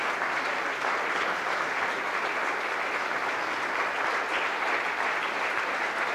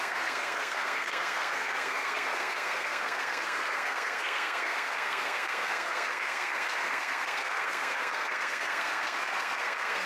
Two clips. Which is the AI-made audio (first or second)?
second